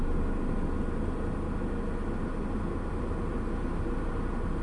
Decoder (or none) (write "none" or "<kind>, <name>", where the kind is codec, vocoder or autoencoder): none